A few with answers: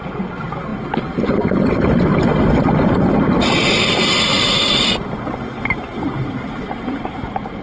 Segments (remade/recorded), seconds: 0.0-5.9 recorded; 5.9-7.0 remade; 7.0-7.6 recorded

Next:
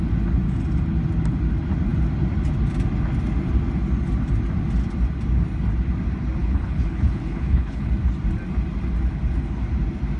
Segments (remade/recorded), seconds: 0.0-6.4 recorded; 6.4-7.9 remade; 7.9-10.2 recorded